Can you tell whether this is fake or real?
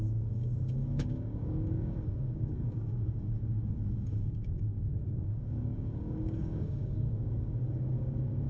fake